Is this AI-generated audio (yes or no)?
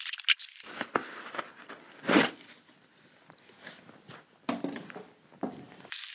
no